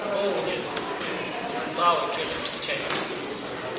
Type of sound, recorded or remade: recorded